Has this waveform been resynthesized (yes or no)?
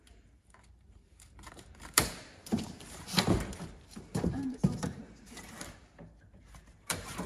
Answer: yes